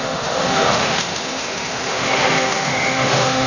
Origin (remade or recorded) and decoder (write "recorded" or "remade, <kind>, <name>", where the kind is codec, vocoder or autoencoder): remade, autoencoder, DAC-VAE